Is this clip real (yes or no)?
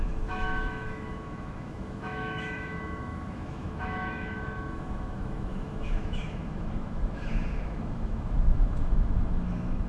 no